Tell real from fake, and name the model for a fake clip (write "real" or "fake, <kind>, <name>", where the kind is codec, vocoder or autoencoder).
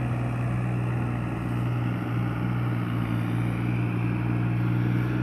real